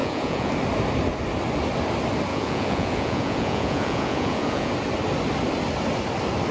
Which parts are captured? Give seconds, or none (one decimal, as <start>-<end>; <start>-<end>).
0.5-2.3; 4.7-6.5